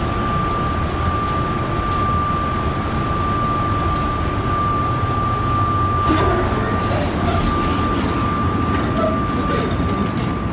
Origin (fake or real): real